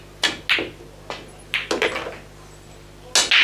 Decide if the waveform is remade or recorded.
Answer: recorded